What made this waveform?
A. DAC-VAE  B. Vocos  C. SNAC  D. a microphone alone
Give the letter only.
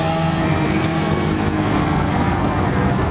C